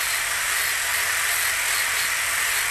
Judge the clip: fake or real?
real